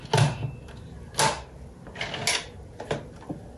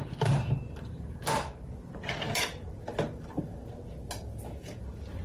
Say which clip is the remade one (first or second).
second